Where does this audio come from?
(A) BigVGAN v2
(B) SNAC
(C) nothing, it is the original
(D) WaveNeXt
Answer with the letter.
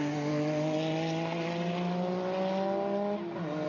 C